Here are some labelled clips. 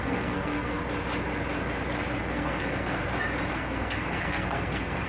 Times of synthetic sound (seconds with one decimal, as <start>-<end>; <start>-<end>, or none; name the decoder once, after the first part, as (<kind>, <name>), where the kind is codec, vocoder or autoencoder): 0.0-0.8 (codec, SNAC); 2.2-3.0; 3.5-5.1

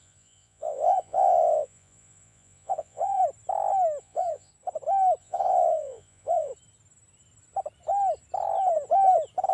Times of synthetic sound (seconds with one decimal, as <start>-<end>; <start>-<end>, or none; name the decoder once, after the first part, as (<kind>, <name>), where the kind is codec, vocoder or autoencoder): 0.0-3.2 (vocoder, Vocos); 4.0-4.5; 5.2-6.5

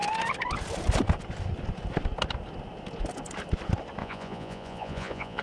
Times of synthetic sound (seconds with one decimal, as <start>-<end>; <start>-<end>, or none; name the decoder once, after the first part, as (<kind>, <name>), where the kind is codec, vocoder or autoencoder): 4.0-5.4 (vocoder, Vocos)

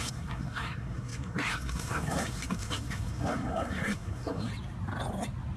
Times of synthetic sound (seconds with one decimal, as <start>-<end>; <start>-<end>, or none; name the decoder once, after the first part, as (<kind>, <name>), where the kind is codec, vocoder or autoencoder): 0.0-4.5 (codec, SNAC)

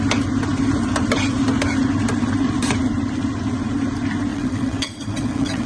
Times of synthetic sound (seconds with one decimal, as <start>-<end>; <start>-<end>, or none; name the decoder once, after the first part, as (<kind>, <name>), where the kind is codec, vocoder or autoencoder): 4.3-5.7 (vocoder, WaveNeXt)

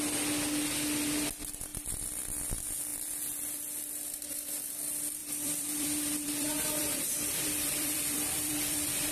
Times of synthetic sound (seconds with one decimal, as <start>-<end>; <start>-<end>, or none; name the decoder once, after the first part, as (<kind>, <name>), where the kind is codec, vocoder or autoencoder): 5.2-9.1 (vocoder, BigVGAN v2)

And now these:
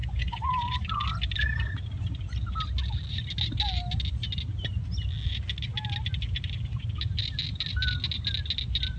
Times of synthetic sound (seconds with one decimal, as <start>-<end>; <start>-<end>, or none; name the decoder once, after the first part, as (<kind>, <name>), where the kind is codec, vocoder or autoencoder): 0.0-0.8 (vocoder, Vocos)

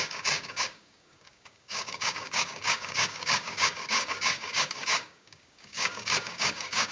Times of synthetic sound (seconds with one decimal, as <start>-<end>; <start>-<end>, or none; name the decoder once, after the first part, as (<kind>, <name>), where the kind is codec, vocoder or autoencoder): 0.0-6.9 (codec, DAC)